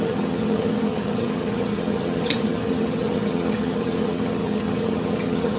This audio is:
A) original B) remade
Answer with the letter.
B